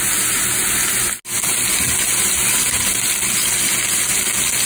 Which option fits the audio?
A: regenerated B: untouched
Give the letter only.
B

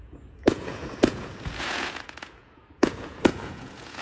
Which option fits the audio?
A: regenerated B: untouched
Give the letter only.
A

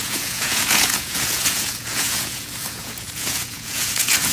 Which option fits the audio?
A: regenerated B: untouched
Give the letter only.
A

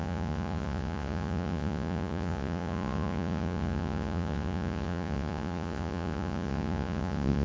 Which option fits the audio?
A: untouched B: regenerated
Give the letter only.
B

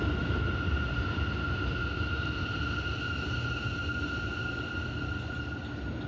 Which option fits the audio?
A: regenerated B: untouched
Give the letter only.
B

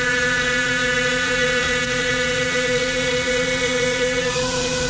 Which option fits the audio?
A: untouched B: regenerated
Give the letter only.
B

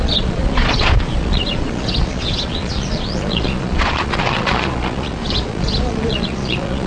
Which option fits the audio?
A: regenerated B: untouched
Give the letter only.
A